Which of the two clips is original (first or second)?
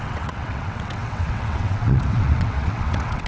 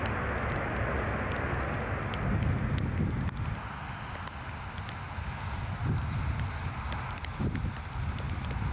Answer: second